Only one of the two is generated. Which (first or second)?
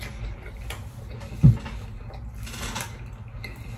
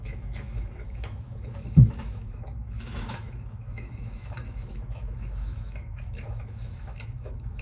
second